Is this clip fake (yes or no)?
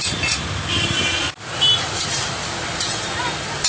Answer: no